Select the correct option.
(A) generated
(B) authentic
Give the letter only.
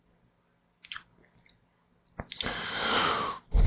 B